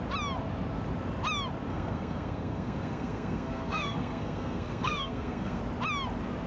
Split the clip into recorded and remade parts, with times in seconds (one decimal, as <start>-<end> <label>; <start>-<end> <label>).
0.0-1.7 recorded; 1.7-5.6 remade; 5.6-6.5 recorded